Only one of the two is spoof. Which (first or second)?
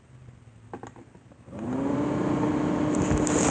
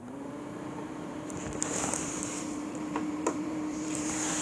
second